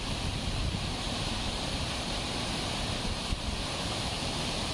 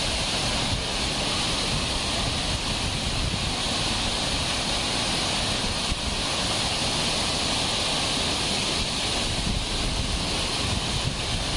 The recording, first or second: second